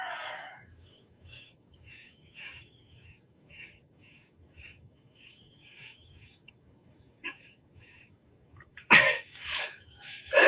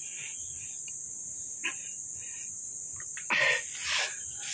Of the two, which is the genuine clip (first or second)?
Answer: second